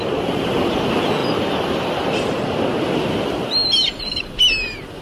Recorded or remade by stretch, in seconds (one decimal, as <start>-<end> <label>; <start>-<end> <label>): 0.0-5.0 recorded